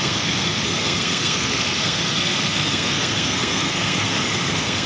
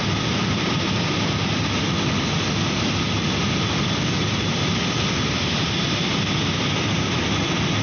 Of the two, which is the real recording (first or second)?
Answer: second